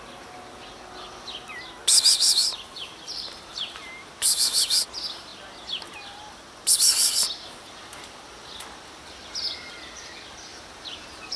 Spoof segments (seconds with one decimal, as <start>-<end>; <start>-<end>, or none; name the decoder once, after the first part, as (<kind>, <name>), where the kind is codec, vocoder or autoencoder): 2.4-4.2 (vocoder, BigVGAN v2); 10.5-11.4